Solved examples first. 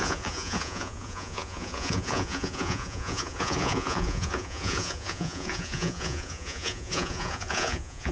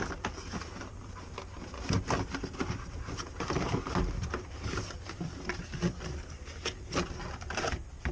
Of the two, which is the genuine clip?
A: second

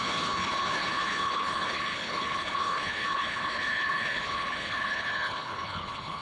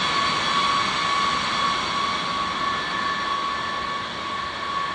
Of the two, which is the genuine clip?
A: second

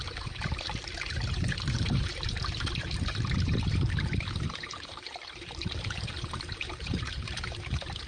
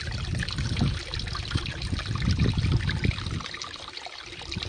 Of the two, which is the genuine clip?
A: second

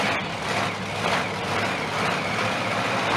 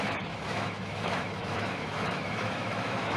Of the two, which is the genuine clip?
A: first